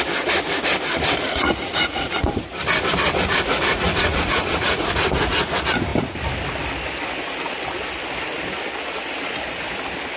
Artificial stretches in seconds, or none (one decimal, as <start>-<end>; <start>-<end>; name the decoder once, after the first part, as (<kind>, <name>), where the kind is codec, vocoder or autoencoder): 1.4-2.4 (vocoder, Vocos); 3.7-5.5